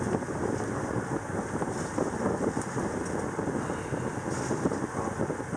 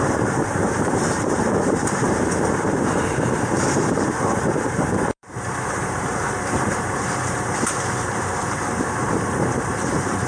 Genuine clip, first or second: first